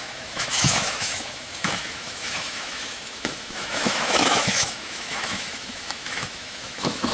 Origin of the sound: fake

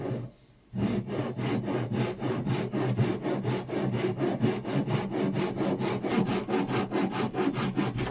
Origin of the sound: real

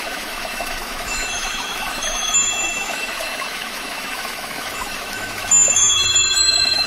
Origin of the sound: fake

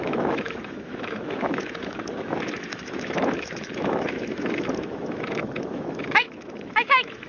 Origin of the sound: fake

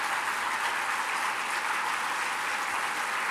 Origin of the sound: real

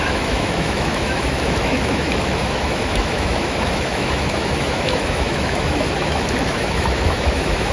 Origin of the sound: fake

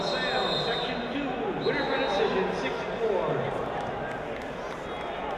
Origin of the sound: real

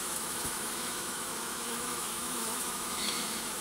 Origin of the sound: fake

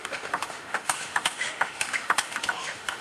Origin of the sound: fake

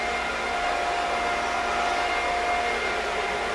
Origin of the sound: real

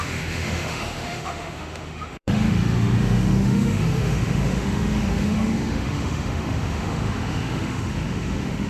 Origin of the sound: fake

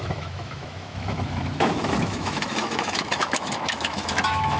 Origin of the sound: fake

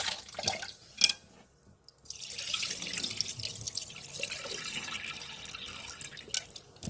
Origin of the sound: real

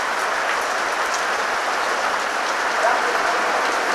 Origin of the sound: real